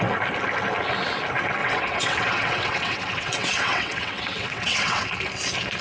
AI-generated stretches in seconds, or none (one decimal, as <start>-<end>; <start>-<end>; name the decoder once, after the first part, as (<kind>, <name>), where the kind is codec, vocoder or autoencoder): 1.6-5.1 (vocoder, WaveNeXt)